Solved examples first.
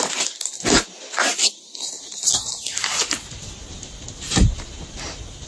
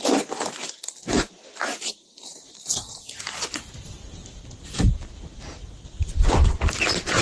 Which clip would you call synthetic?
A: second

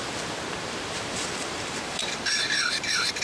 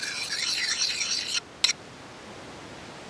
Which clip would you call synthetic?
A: first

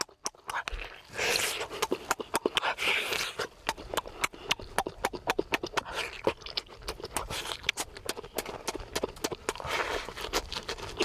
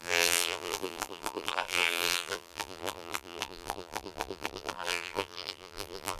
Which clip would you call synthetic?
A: second